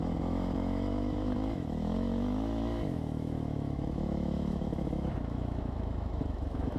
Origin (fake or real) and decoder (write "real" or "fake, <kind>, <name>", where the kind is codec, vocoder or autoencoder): fake, autoencoder, DAC-VAE